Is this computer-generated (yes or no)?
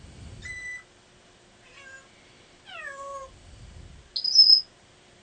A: no